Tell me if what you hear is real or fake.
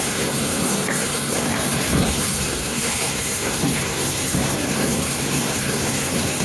fake